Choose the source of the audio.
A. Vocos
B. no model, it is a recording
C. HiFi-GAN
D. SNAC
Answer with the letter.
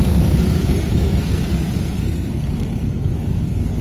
D